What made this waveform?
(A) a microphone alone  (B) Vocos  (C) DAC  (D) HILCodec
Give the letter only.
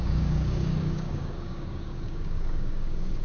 C